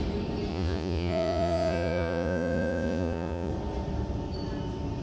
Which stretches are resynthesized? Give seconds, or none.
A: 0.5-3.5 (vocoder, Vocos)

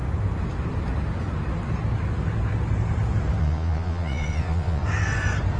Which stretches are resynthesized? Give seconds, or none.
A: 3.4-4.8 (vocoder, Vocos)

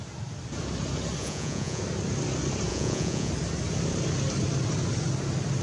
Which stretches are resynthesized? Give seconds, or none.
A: 1.2-1.8 (vocoder, Vocos); 2.7-3.3

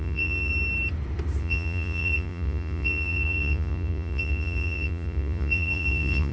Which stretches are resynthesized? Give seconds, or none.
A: 0.0-0.5 (vocoder, Vocos); 1.4-6.3